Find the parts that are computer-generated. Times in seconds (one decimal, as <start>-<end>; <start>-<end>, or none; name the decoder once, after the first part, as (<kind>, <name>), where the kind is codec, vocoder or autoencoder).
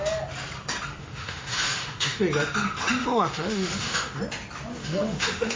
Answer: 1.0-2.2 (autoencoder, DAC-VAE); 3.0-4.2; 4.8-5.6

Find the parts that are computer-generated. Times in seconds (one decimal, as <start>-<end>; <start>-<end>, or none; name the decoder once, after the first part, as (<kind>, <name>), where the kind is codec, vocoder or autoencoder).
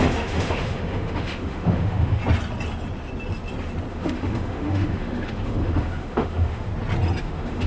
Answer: 0.0-2.2 (autoencoder, DAC-VAE); 3.9-6.7; 7.2-7.7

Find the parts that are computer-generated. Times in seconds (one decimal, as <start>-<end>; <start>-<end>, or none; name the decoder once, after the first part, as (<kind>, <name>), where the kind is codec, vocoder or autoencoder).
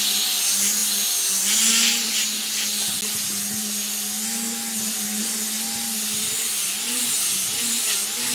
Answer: none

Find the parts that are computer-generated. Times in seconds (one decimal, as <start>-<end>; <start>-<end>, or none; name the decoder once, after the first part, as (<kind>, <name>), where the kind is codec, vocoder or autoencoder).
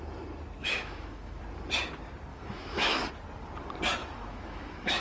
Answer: 0.6-1.4 (autoencoder, DAC-VAE); 2.3-3.0; 4.0-5.0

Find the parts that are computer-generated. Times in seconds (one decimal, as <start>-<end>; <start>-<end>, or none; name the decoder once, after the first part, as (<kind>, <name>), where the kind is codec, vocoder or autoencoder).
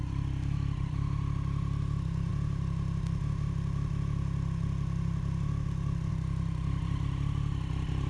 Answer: none